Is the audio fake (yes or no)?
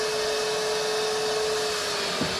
no